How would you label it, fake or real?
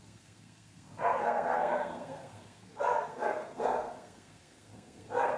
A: fake